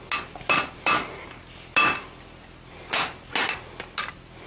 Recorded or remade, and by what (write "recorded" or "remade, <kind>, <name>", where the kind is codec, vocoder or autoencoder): recorded